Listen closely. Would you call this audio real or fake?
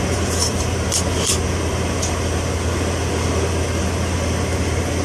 fake